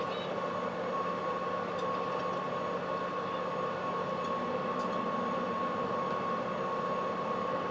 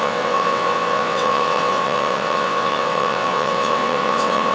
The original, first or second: first